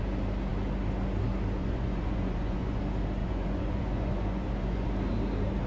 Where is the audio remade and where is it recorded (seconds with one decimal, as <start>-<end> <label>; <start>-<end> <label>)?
0.0-1.6 recorded; 1.6-2.8 remade; 2.8-3.2 recorded; 3.2-4.9 remade; 4.9-5.7 recorded